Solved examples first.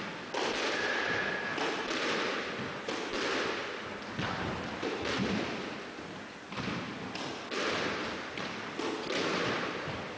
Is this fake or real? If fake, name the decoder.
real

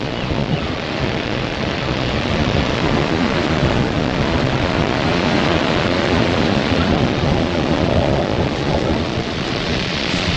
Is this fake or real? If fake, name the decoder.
fake, vocoder, Vocos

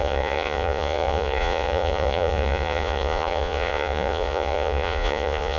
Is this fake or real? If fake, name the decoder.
fake, vocoder, Vocos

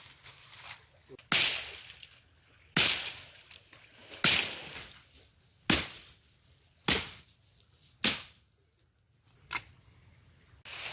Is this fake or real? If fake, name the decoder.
real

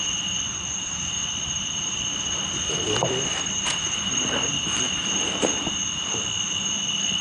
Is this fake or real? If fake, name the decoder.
real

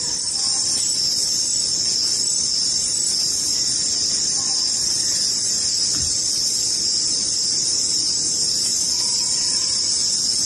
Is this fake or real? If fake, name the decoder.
real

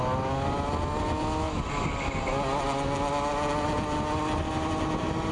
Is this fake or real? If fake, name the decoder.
real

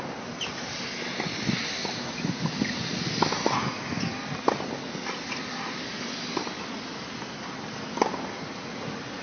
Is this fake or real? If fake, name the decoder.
real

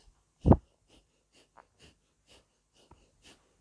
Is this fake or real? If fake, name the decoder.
real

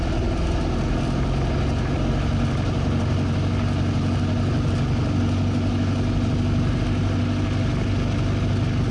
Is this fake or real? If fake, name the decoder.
real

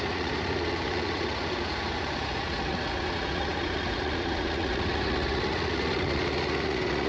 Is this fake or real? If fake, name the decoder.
fake, vocoder, Vocos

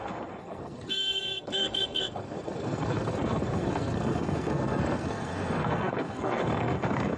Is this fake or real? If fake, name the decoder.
fake, codec, SNAC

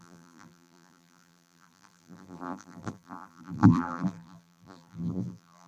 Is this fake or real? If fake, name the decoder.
fake, vocoder, BigVGAN v2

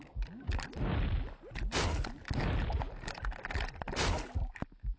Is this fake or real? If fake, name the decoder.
real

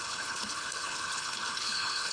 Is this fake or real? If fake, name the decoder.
fake, codec, HILCodec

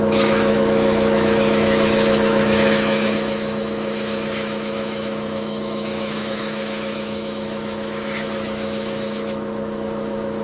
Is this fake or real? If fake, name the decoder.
fake, autoencoder, DAC-VAE